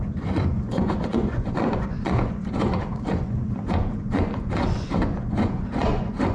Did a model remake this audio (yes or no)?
yes